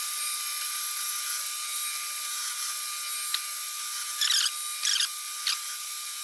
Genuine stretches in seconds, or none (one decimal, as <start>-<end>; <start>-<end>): 1.8-5.5